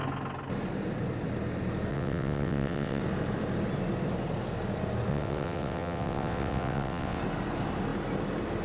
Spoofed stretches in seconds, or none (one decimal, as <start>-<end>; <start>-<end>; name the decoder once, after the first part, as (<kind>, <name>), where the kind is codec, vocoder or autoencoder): 1.9-3.0 (vocoder, WaveNeXt); 5.1-7.2